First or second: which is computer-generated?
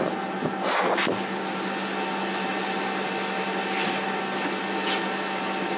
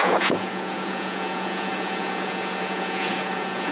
second